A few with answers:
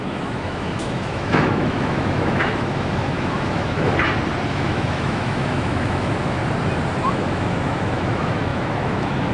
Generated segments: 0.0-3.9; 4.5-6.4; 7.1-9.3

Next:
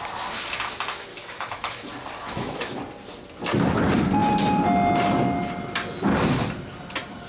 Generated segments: 1.1-1.8; 2.2-2.7

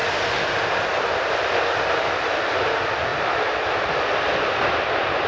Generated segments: none

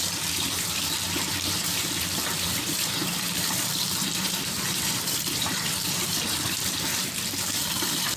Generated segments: 0.0-8.2

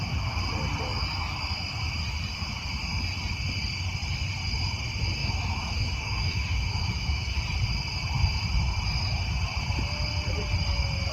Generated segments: 5.2-7.4

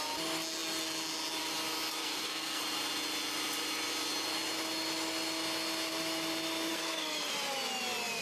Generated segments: 2.0-2.6; 6.7-7.3

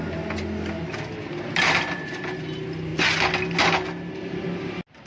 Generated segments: none

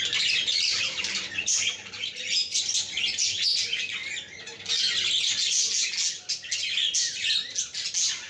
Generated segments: 0.5-2.6